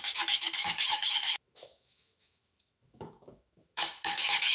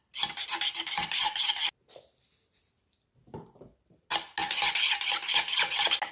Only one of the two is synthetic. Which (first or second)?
first